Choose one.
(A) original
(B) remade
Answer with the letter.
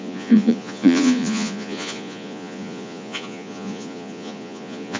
B